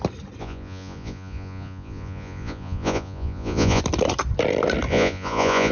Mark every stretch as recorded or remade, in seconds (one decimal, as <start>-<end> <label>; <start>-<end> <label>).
0.0-0.4 recorded; 0.4-3.8 remade; 3.8-4.9 recorded; 4.9-5.7 remade